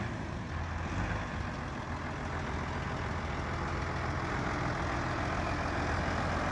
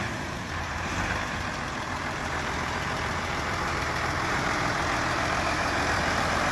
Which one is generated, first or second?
second